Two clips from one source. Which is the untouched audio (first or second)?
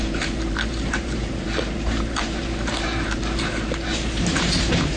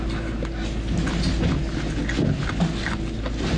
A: second